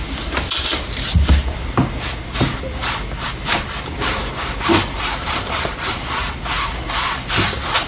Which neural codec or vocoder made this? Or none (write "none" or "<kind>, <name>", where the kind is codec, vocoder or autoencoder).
none